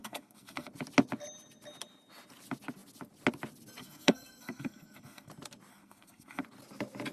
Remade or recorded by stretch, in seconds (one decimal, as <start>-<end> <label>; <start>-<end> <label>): 0.0-0.7 remade; 0.7-3.8 recorded; 3.8-5.3 remade; 5.3-5.7 recorded; 5.7-6.4 remade; 6.4-7.1 recorded

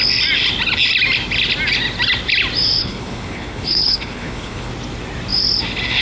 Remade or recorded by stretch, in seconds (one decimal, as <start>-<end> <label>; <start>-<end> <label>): 0.0-2.8 recorded; 2.8-4.7 remade; 4.7-6.0 recorded

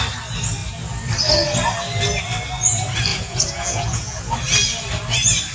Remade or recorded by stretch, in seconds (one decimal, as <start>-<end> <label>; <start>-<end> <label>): 0.0-3.1 recorded; 3.1-4.2 remade; 4.2-5.5 recorded

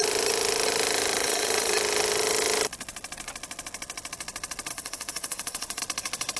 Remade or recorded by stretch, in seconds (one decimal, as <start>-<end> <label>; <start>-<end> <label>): 0.0-1.2 recorded; 1.2-1.7 remade; 1.7-4.7 recorded; 4.7-5.8 remade; 5.8-6.4 recorded

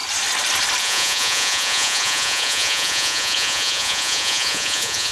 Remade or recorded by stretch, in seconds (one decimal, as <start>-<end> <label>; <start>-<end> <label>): 0.0-0.8 recorded; 0.8-5.1 remade

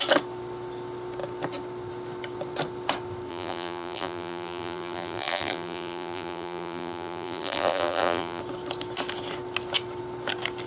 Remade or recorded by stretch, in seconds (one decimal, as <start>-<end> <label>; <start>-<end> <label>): 0.0-3.3 recorded; 3.3-8.4 remade; 8.4-10.7 recorded